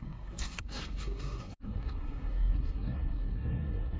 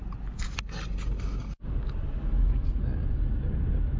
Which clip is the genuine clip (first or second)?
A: second